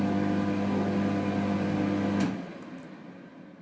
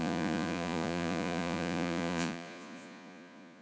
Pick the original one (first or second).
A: first